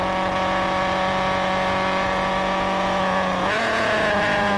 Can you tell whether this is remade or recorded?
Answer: remade